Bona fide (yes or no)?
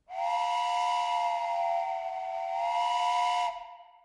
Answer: yes